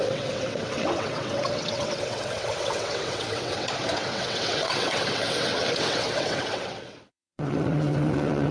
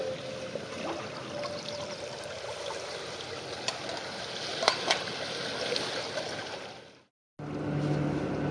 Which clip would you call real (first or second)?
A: second